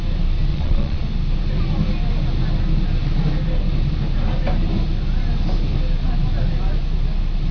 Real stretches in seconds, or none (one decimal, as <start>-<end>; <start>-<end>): 0.0-0.5; 1.1-7.5